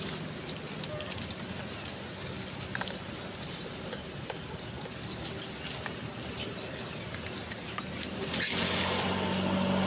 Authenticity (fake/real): real